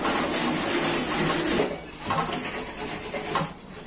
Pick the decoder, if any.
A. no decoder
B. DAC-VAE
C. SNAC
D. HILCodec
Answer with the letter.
A